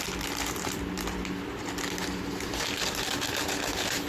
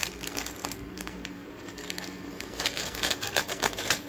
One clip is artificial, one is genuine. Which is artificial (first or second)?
second